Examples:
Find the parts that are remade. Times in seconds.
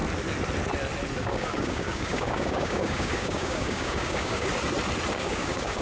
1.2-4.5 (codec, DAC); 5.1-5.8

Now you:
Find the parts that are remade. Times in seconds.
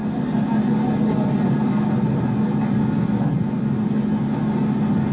none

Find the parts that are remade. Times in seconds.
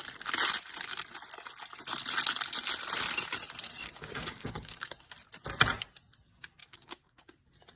3.8-5.1 (codec, DAC); 6.6-7.3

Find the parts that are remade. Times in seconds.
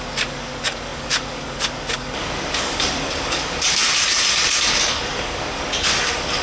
0.0-3.8 (codec, DAC); 4.7-6.4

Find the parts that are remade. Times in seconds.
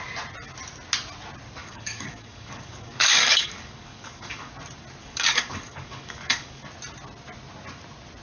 1.6-4.5 (codec, DAC); 5.0-6.6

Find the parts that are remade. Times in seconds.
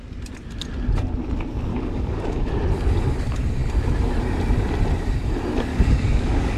1.7-2.5 (codec, DAC); 5.7-6.6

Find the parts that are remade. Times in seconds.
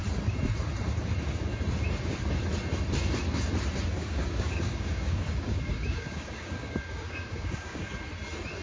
4.0-7.9 (codec, DAC)